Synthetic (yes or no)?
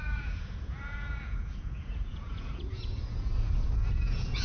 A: yes